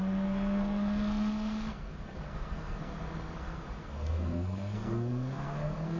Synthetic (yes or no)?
yes